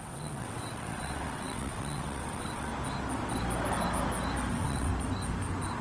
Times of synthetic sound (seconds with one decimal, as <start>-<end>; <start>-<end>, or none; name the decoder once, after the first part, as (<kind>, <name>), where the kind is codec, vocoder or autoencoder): 0.0-2.7 (vocoder, WaveNeXt); 4.5-4.9